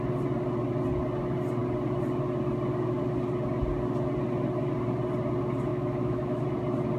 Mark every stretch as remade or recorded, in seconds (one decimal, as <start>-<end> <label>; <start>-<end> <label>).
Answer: 0.0-5.7 recorded; 5.7-6.4 remade; 6.4-7.0 recorded